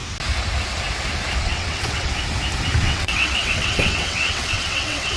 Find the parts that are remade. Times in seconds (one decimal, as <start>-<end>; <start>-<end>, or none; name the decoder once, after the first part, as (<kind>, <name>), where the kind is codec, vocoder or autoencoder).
1.4-2.1 (vocoder, WaveNeXt); 2.8-5.2